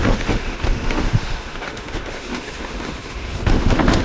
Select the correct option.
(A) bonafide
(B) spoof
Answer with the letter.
B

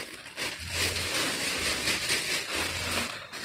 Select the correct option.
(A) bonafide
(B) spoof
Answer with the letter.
A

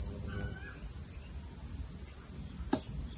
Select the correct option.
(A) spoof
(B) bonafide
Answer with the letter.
B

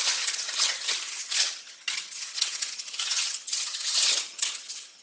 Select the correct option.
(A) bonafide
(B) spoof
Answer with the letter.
B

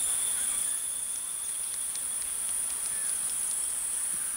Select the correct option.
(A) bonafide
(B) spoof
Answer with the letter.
A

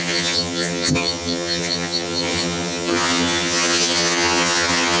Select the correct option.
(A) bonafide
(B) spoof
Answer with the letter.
B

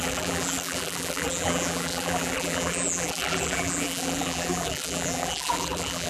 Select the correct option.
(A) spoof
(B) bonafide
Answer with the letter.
A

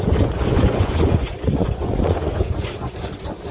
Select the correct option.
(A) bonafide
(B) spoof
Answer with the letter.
B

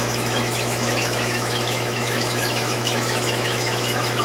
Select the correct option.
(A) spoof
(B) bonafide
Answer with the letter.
A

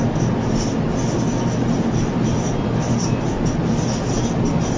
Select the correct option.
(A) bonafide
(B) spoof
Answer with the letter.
A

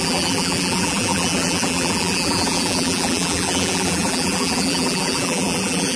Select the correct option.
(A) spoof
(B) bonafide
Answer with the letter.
A